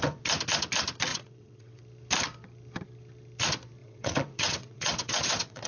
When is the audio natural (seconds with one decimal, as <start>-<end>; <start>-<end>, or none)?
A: 0.0-1.1; 1.8-3.8